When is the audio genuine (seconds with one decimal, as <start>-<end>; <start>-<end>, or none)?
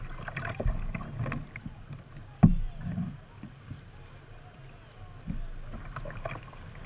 0.0-6.9